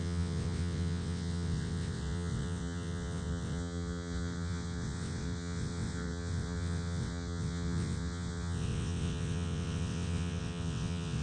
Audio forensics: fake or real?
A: fake